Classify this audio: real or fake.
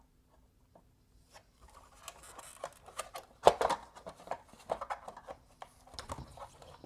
real